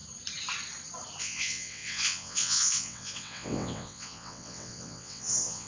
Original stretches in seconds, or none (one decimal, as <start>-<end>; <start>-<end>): 0.0-1.2